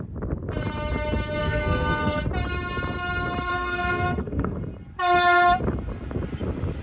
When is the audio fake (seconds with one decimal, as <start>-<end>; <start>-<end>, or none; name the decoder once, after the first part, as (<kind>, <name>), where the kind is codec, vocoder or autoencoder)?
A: 1.4-2.2 (codec, SNAC); 3.5-4.6